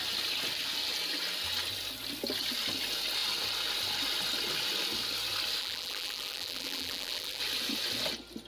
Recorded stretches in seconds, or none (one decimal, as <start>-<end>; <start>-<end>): 0.0-5.6; 7.4-8.5